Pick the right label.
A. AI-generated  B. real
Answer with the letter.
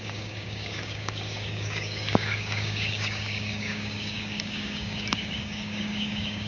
A